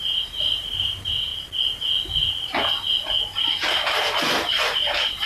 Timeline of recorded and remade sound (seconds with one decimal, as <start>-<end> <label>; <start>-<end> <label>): 0.0-1.3 remade; 1.3-4.5 recorded; 4.5-5.3 remade